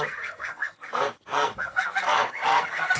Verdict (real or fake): fake